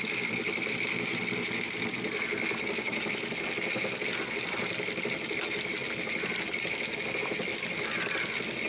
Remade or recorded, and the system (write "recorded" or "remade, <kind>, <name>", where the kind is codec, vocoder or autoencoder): recorded